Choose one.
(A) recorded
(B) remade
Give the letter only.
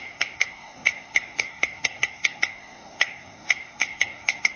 B